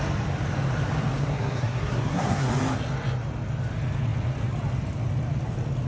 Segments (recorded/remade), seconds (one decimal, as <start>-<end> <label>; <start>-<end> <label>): 0.0-1.2 recorded; 1.2-2.5 remade; 2.5-5.9 recorded